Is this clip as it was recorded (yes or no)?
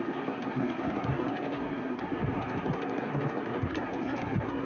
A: no